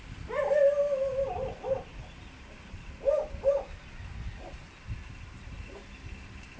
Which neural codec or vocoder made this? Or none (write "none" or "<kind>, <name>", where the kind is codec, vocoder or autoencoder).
none